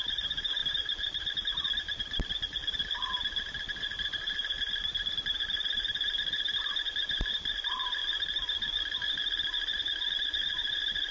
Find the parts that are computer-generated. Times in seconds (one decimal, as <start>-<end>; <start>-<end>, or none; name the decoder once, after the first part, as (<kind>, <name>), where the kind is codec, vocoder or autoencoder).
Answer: 0.0-8.0 (vocoder, BigVGAN v2); 9.7-11.1